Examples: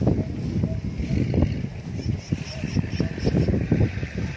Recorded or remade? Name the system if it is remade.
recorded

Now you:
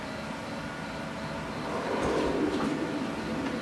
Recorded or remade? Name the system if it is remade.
recorded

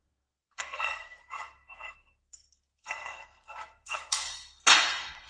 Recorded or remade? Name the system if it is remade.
remade, codec, SNAC